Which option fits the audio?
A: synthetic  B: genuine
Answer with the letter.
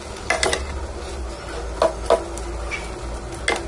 B